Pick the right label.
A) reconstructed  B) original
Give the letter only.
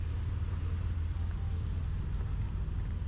B